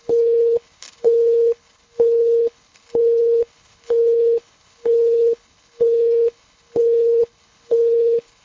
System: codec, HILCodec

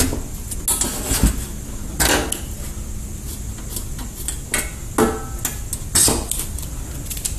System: none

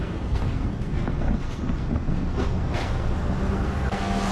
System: codec, SNAC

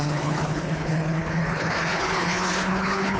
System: codec, HILCodec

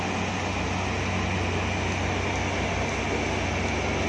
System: none